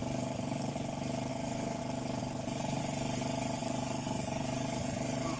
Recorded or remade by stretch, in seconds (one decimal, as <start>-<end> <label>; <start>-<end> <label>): 0.0-0.7 remade; 0.7-1.3 recorded; 1.3-1.8 remade; 1.8-2.2 recorded; 2.2-2.8 remade; 2.8-3.6 recorded; 3.6-5.4 remade